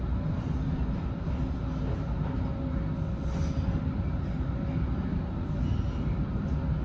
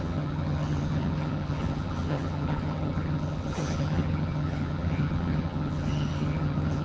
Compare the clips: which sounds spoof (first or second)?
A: second